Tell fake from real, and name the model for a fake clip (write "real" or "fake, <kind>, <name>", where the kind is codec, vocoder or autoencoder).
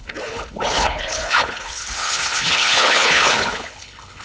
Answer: fake, codec, HILCodec